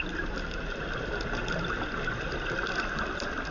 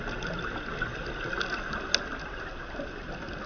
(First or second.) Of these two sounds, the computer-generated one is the first